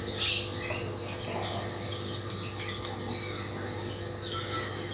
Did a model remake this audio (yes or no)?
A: no